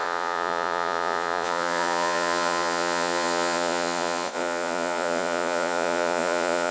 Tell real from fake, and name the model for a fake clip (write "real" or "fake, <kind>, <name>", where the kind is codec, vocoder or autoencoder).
fake, vocoder, Vocos